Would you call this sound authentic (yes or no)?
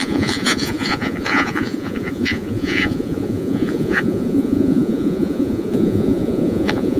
no